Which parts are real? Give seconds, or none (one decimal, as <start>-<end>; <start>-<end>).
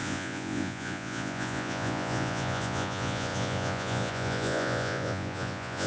none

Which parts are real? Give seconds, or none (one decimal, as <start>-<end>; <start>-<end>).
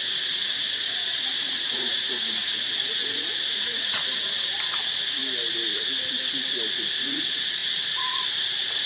5.2-7.0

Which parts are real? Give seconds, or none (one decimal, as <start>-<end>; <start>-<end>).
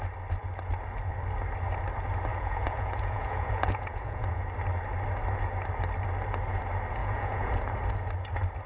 0.0-2.3; 4.4-7.0; 7.5-8.7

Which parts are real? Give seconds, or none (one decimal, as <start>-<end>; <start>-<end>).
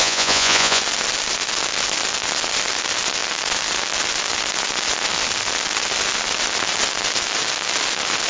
0.8-8.3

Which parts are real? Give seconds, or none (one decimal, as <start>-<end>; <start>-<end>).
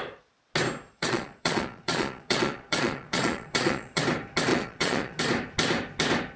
0.0-0.9; 4.0-4.5; 5.2-6.4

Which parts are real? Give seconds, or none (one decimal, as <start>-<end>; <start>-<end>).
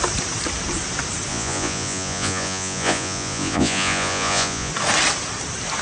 0.0-1.3; 4.7-5.8